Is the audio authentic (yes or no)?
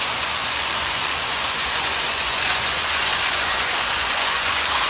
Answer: no